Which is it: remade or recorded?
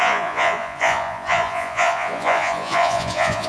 remade